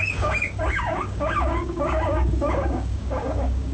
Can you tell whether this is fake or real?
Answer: fake